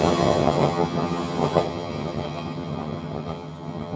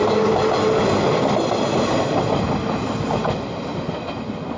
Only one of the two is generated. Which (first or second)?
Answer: first